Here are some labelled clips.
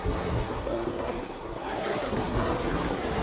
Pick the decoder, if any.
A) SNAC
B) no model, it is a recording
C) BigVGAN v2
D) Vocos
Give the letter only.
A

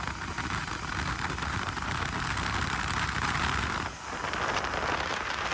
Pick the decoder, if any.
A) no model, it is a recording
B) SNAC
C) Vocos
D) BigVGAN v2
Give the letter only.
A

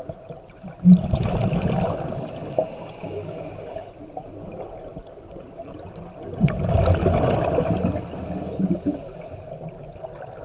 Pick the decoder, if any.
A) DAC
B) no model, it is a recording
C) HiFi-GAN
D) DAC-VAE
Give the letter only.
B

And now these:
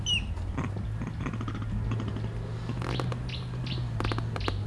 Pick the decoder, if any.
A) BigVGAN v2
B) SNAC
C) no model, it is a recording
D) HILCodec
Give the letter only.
C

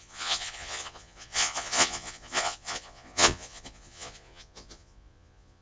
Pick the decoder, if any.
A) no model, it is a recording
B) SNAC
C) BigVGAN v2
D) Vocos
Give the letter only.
D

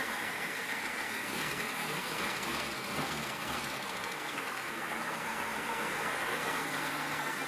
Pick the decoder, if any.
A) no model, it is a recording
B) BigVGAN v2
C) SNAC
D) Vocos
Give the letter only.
C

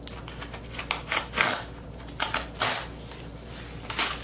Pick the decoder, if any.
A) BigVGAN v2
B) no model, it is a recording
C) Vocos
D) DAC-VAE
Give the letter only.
B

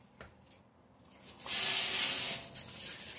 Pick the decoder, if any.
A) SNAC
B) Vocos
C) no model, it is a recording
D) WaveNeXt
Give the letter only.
C